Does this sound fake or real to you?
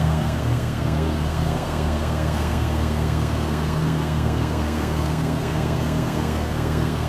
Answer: fake